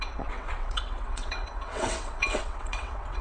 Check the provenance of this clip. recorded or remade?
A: remade